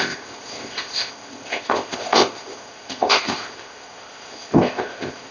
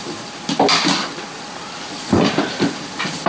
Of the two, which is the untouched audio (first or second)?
second